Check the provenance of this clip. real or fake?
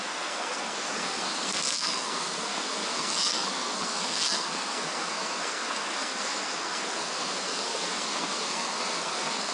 fake